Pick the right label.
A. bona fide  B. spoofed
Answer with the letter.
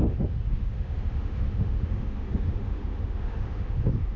B